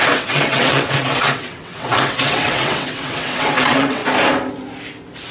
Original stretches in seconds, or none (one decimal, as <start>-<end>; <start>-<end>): 4.0-5.3